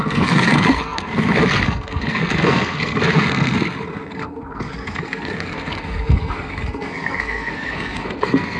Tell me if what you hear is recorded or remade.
remade